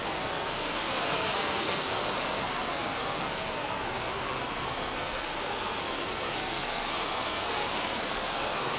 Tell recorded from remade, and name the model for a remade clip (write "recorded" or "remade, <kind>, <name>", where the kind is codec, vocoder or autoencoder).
remade, codec, SNAC